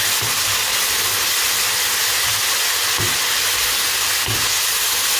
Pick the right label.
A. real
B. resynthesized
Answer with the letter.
A